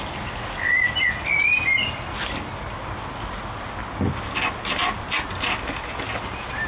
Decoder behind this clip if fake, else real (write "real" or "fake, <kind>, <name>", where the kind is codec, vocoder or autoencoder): real